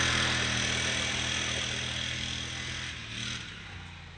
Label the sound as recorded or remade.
recorded